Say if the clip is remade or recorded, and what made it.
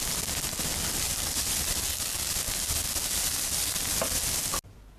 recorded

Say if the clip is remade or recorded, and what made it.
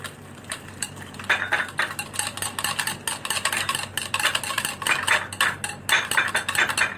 recorded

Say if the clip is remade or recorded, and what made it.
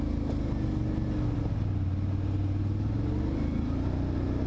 recorded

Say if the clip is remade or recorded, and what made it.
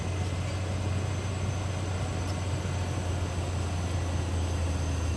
recorded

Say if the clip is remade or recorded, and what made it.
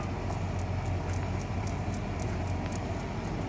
recorded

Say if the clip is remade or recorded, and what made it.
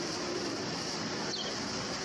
recorded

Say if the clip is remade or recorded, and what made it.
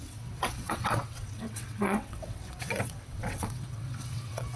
remade, vocoder, WaveNeXt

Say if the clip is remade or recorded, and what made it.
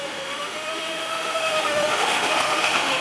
remade, autoencoder, DAC-VAE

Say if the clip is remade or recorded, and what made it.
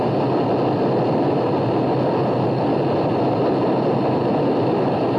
recorded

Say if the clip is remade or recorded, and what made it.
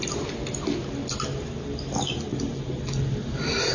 recorded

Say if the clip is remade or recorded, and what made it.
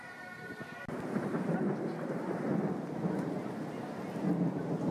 recorded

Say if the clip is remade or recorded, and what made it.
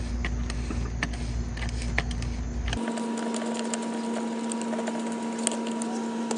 recorded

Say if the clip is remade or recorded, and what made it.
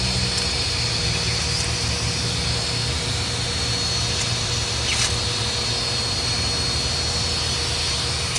recorded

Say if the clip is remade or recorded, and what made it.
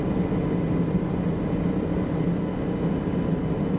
recorded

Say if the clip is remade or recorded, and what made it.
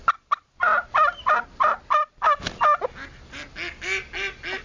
recorded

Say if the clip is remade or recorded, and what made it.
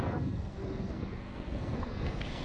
remade, codec, SNAC